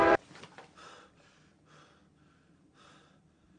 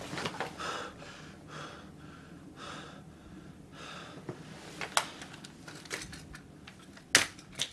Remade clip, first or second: first